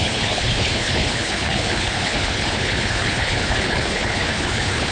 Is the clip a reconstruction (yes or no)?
yes